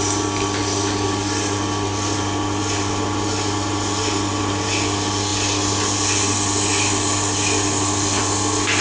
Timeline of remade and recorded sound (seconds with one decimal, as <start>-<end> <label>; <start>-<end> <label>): 0.0-8.8 recorded